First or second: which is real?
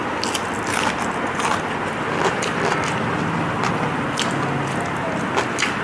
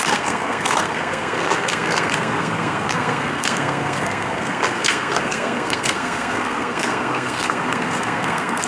first